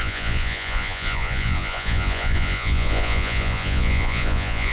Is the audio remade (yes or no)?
yes